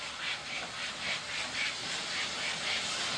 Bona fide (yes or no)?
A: yes